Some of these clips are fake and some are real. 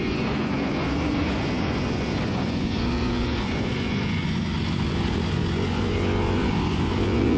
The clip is fake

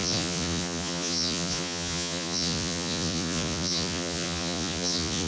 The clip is fake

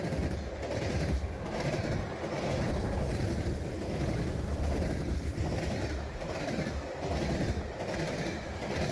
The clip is real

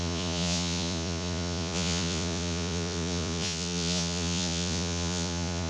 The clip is fake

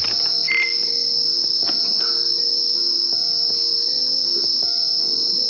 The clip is real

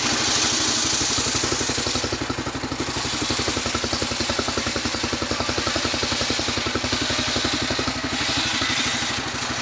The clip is real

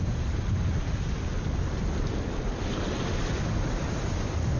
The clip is real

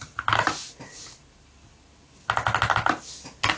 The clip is real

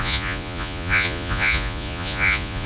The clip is fake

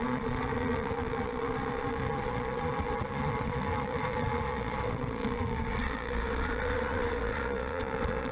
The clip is fake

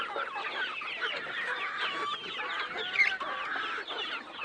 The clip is real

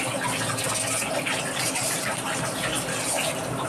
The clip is real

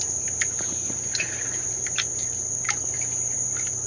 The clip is real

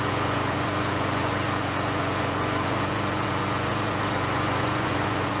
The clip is fake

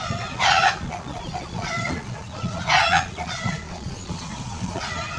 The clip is fake